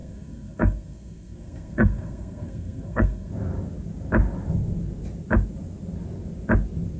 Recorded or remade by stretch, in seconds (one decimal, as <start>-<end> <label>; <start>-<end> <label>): 0.0-3.3 remade; 3.3-7.0 recorded